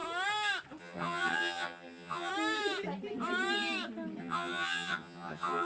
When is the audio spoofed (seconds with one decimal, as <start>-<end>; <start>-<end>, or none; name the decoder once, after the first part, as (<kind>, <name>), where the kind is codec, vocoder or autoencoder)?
0.8-2.3 (vocoder, HiFi-GAN); 4.2-5.6